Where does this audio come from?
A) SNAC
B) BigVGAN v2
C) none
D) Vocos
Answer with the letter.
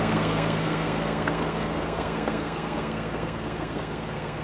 A